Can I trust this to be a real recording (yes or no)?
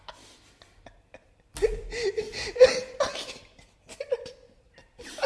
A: yes